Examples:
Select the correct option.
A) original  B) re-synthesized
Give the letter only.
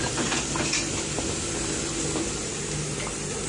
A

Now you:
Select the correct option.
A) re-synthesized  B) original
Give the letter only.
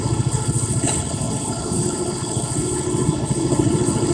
A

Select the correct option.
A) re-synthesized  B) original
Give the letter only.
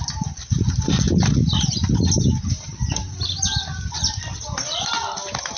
B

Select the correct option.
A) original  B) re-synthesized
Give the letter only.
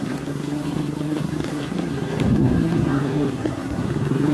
B